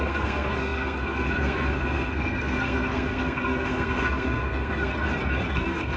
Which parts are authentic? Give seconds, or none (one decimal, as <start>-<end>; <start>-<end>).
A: 4.9-5.5